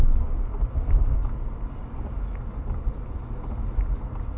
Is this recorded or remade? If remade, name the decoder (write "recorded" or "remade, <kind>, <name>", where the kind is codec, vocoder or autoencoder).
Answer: recorded